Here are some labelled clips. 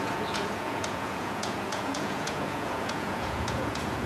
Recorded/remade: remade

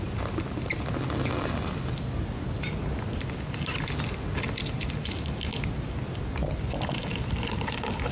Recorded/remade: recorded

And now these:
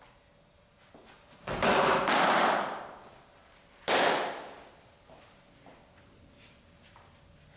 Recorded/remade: recorded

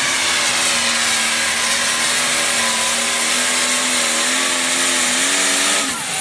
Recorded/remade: recorded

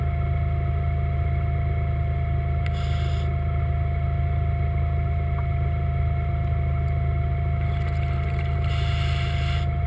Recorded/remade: recorded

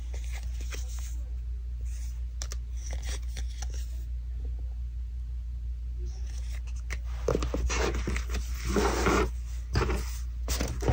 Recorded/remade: recorded